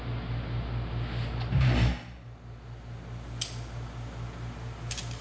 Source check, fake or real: real